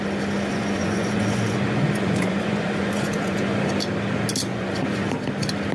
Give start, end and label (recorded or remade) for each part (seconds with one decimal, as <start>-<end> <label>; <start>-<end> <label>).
0.0-0.5 recorded; 0.5-3.7 remade; 3.7-4.5 recorded; 4.5-5.1 remade; 5.1-5.7 recorded